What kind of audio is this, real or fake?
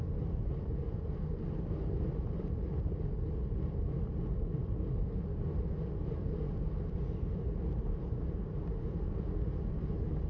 real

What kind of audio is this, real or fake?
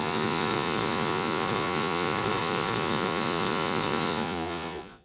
fake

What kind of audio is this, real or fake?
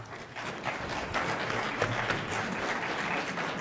real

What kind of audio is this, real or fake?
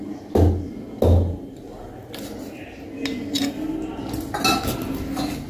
real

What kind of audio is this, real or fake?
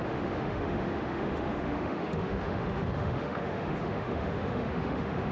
fake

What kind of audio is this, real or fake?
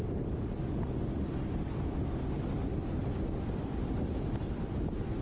fake